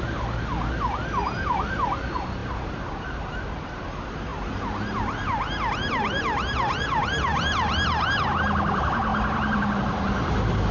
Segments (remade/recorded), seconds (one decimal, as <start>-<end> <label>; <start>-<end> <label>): 0.0-2.4 recorded; 2.4-3.2 remade; 3.2-7.3 recorded; 7.3-8.0 remade; 8.0-10.7 recorded

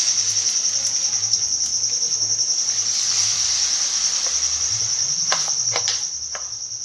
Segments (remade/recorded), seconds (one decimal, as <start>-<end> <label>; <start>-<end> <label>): 0.0-6.8 recorded

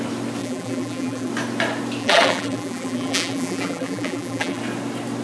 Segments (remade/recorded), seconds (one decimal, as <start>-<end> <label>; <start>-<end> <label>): 0.0-0.4 recorded; 0.4-1.3 remade; 1.3-2.0 recorded; 2.0-4.6 remade; 4.6-5.2 recorded

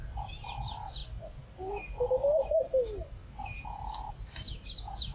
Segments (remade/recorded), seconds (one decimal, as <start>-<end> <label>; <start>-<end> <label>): 0.0-5.1 recorded

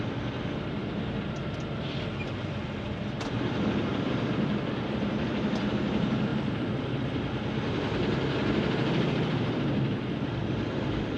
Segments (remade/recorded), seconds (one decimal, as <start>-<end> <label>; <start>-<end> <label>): 0.0-11.2 remade

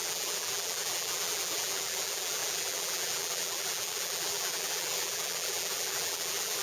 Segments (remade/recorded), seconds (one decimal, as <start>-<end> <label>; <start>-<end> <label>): 0.0-6.6 remade

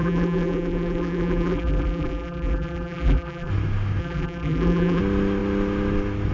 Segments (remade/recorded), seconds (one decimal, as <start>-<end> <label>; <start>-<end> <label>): 0.0-3.5 remade; 3.5-4.0 recorded; 4.0-5.0 remade; 5.0-6.3 recorded